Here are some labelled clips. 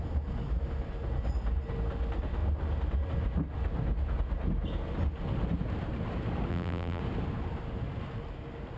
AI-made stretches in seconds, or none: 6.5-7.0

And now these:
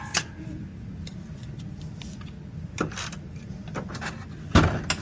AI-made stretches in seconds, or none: none

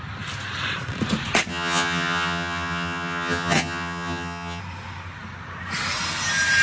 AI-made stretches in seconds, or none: 1.5-4.6

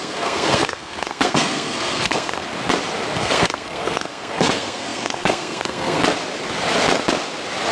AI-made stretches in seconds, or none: 0.0-2.5; 3.2-6.0

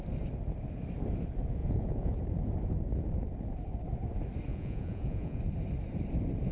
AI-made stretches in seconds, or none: 1.6-2.2; 4.5-5.4

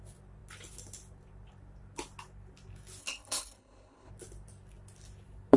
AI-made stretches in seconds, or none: 3.0-4.1